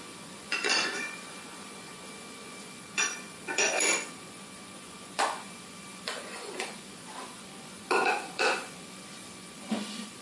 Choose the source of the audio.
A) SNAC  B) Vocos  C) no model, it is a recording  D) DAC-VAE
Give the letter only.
B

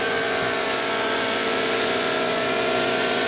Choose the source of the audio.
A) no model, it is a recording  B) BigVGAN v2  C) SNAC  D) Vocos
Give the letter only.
D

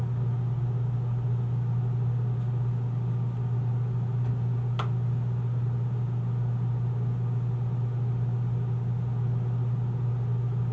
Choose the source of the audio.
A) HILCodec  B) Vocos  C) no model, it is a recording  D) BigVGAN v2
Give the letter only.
C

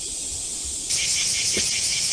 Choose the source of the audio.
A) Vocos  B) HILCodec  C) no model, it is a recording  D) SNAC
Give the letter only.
A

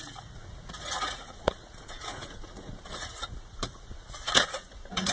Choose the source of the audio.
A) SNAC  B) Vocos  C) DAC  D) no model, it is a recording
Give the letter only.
B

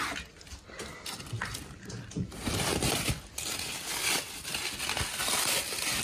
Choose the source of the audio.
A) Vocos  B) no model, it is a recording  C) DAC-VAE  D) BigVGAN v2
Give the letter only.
B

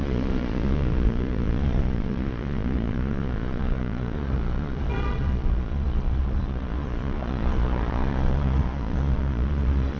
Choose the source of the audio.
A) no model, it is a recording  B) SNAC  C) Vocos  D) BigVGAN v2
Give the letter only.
C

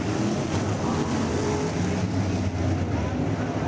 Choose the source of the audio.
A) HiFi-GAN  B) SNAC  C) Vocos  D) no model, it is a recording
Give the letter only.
D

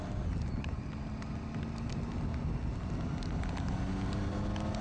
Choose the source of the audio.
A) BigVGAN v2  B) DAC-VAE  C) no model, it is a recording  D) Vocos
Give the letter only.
C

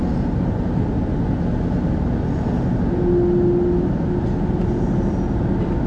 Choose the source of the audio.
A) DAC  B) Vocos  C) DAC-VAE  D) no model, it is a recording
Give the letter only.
D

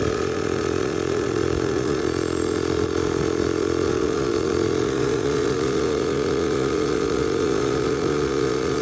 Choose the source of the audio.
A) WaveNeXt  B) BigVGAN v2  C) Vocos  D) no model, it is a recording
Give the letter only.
C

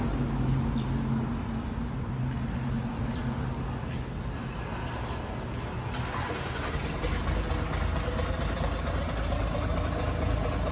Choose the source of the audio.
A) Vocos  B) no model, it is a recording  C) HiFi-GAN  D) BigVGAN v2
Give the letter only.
B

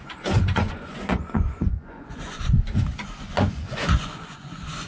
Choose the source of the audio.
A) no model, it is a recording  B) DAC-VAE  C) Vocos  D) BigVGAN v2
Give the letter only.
C